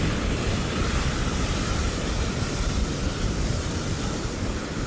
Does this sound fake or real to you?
real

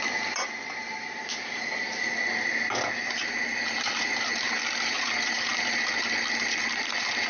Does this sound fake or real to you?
real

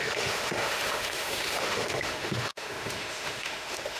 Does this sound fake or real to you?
fake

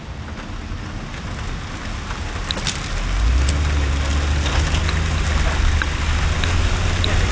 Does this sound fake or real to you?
real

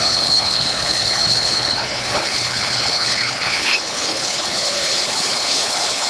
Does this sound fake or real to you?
fake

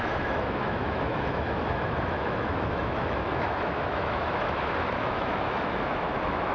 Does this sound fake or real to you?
fake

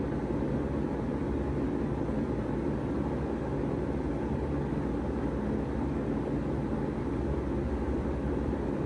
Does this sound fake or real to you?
real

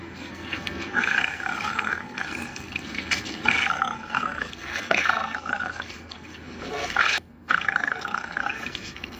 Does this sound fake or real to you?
fake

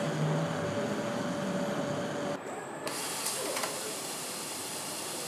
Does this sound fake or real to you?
real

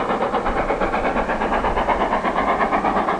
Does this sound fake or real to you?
real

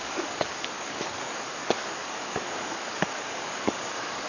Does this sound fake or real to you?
fake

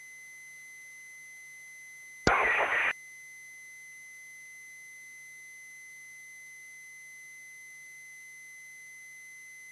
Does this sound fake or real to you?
real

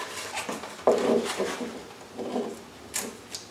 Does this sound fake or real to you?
real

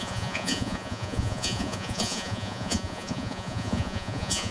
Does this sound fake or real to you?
fake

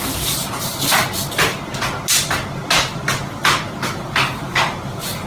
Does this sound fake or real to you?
real